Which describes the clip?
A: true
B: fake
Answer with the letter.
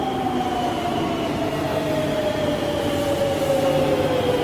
A